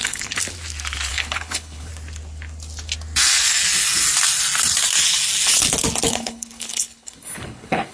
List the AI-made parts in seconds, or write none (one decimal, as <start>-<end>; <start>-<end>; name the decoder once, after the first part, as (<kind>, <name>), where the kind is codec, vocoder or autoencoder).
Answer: 0.0-0.4 (codec, HILCodec); 1.1-1.9; 6.1-7.9